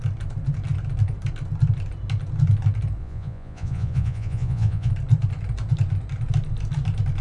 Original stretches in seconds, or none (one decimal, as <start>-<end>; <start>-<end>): 0.0-3.0; 4.9-7.2